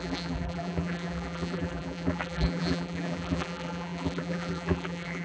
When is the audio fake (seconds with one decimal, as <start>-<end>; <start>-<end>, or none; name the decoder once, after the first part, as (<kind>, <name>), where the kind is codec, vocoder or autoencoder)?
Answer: 0.0-5.2 (vocoder, BigVGAN v2)